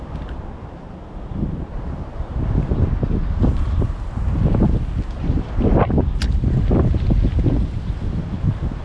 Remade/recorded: recorded